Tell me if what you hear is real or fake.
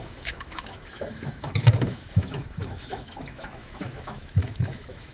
fake